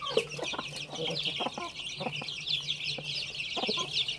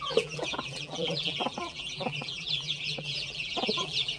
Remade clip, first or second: second